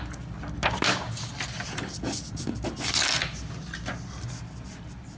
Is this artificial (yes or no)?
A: no